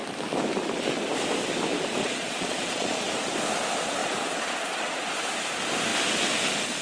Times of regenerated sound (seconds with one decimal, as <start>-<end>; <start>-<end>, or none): 2.0-3.1; 4.0-5.0